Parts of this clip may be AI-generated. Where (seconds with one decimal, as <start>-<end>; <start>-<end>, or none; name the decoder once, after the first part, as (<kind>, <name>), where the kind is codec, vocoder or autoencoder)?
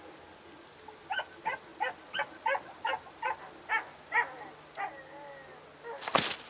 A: none